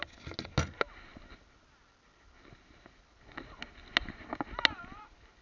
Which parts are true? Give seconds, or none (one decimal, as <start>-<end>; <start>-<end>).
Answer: 0.0-5.4